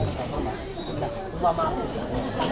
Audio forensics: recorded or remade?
recorded